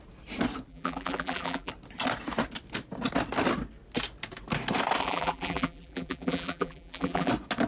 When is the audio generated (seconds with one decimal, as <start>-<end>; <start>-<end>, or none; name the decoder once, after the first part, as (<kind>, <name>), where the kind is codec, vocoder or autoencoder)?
0.7-1.7 (vocoder, BigVGAN v2); 5.0-7.3